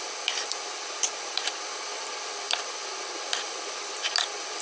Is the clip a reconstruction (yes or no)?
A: yes